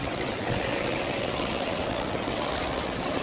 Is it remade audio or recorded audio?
remade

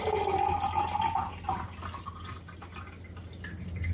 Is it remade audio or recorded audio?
recorded